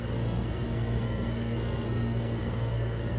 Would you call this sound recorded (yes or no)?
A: no